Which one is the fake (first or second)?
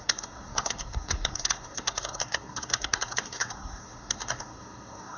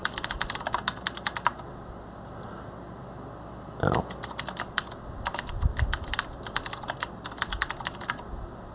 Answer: first